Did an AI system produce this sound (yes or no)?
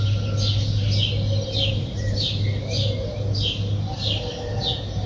no